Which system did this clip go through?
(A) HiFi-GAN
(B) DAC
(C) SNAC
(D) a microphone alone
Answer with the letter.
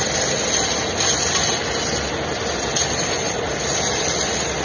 D